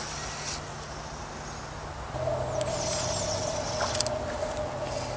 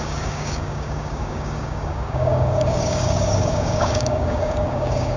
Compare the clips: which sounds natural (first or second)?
first